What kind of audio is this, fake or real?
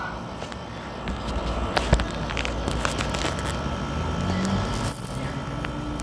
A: real